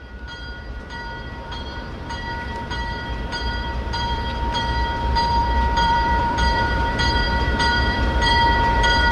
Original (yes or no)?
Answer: no